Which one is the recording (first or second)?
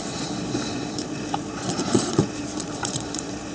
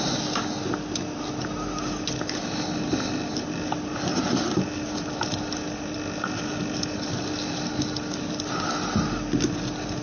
second